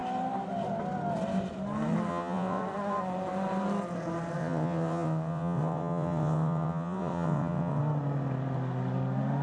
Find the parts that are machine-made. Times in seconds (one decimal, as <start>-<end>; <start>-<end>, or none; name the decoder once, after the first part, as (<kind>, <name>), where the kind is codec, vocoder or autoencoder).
2.1-2.6 (vocoder, WaveNeXt); 4.4-7.8